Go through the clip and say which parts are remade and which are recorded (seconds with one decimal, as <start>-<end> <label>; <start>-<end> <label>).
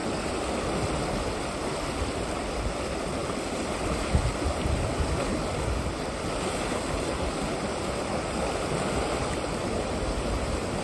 0.0-10.8 recorded